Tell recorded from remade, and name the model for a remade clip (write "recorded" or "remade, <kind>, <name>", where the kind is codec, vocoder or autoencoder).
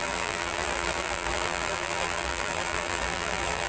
remade, vocoder, BigVGAN v2